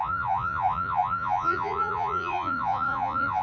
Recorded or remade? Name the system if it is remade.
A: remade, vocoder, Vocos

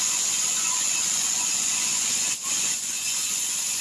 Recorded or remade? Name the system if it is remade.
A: remade, vocoder, Vocos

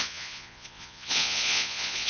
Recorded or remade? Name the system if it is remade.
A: remade, vocoder, Vocos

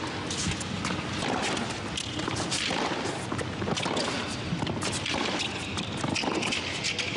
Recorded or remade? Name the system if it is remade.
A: recorded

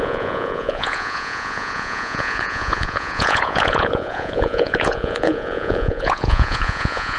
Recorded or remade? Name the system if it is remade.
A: remade, vocoder, Vocos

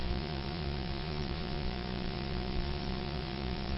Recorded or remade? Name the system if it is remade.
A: remade, vocoder, Vocos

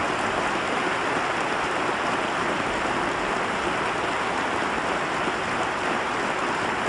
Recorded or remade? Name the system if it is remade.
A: recorded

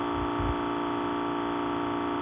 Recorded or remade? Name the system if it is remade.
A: recorded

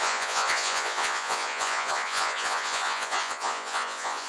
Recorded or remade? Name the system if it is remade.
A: remade, vocoder, Vocos